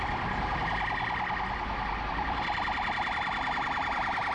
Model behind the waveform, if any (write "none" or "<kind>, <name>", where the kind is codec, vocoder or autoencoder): none